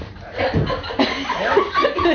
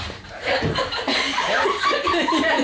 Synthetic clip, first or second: second